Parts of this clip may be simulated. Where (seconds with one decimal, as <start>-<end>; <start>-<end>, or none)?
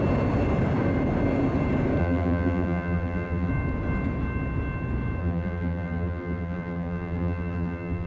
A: 2.0-3.5; 5.2-8.1